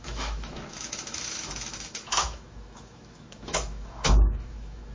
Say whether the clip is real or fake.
fake